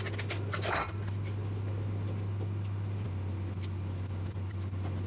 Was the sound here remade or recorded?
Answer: recorded